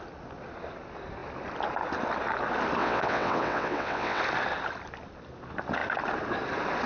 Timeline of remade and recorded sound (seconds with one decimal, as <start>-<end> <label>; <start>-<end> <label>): 0.0-2.8 recorded; 2.8-4.2 remade; 4.2-6.9 recorded